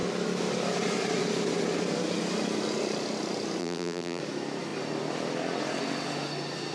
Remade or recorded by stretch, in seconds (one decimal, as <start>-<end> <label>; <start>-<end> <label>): 0.0-3.6 recorded; 3.6-4.2 remade; 4.2-6.7 recorded